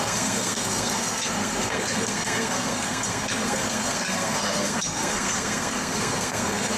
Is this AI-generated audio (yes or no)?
yes